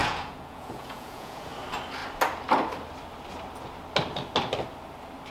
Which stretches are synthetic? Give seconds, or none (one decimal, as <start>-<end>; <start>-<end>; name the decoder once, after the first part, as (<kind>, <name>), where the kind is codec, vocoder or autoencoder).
0.0-1.4 (vocoder, Vocos)